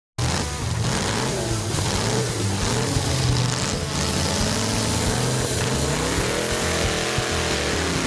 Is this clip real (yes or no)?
yes